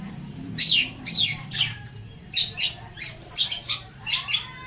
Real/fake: fake